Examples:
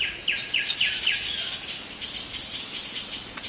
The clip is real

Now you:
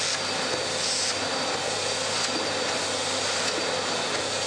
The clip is real